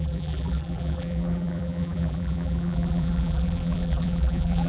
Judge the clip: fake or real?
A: fake